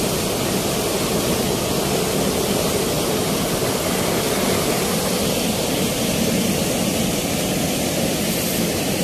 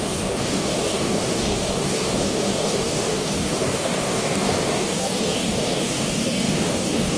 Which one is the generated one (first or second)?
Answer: second